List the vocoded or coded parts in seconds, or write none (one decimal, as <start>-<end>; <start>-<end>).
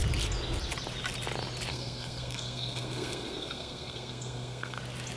1.7-4.8